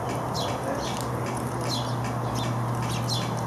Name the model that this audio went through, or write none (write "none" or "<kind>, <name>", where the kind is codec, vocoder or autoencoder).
none